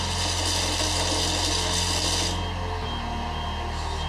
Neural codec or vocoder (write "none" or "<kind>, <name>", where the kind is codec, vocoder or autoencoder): none